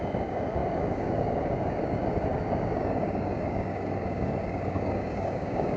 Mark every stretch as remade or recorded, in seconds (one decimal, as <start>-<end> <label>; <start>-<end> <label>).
0.0-5.8 remade